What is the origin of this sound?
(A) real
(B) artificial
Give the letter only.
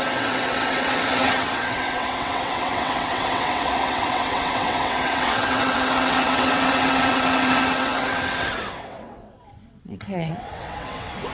B